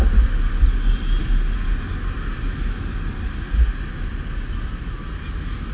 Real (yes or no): yes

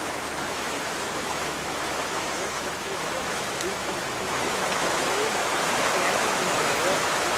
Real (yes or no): no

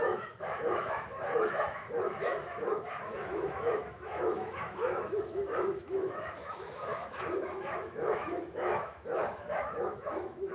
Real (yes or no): no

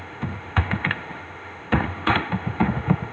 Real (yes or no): no